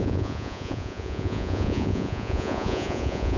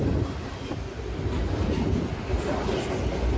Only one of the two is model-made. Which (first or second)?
first